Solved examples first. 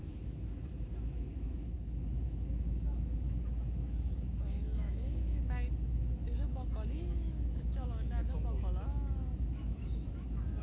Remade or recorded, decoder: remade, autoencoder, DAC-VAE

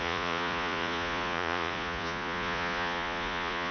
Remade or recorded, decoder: remade, vocoder, Vocos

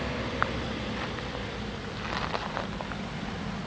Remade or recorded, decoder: recorded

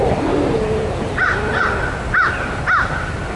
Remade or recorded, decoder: recorded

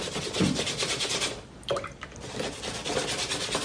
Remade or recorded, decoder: recorded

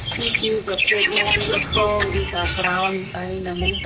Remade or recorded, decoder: remade, codec, SNAC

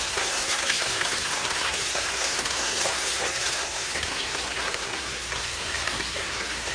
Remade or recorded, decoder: remade, codec, SNAC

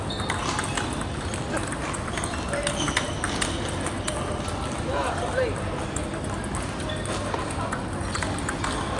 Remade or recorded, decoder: recorded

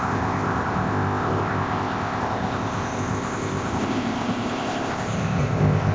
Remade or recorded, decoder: remade, codec, ZipCodec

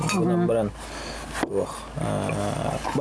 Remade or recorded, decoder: recorded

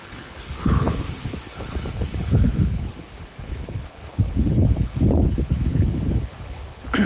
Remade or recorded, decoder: remade, codec, HILCodec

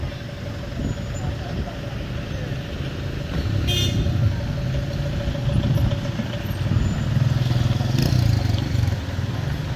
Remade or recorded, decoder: recorded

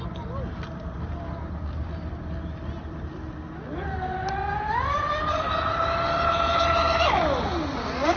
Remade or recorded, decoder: recorded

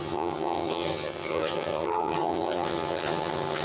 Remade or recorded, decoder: remade, vocoder, HiFi-GAN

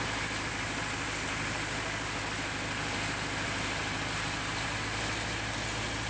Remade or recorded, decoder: recorded